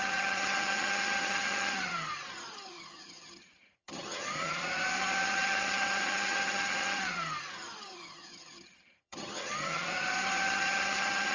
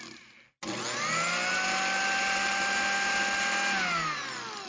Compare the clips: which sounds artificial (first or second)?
first